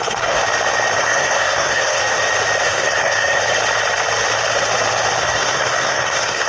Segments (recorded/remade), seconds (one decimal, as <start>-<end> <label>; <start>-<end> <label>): 0.0-0.4 remade; 0.4-1.0 recorded; 1.0-2.0 remade; 2.0-2.6 recorded; 2.6-3.4 remade; 3.4-5.2 recorded; 5.2-6.5 remade